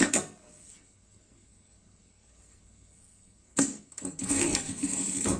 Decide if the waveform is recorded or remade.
remade